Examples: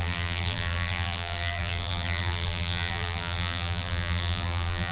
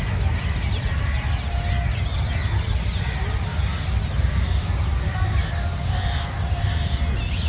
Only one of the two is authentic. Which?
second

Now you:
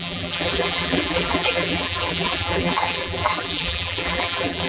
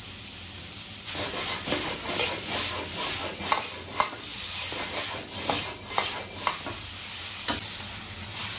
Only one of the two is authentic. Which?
second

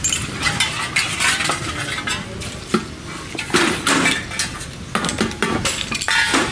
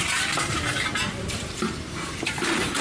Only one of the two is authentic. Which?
first